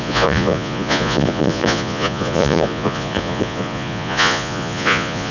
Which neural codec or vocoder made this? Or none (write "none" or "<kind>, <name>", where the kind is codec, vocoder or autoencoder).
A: vocoder, Vocos